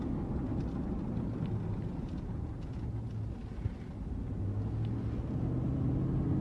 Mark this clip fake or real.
real